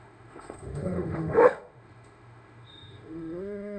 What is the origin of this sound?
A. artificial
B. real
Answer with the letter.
A